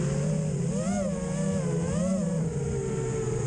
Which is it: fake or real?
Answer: real